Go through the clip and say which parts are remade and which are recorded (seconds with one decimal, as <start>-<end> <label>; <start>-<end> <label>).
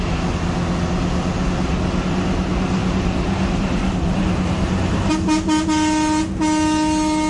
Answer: 0.0-2.8 recorded; 2.8-5.1 remade; 5.1-7.3 recorded